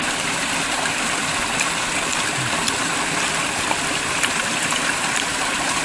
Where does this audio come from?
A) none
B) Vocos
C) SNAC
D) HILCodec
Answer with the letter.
A